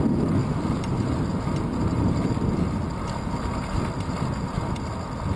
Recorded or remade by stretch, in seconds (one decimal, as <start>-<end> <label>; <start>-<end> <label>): 0.0-5.4 recorded